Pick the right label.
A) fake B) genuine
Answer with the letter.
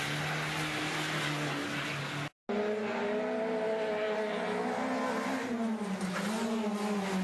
B